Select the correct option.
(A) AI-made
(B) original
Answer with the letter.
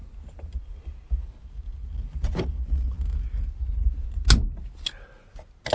B